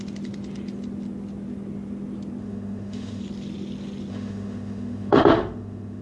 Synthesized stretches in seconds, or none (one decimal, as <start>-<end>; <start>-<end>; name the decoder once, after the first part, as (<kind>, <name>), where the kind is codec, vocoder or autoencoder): 2.4-3.2 (autoencoder, DAC-VAE); 4.1-6.0